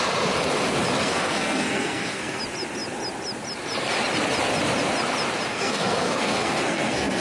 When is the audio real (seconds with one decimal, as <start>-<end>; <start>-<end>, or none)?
0.0-1.0; 2.4-5.5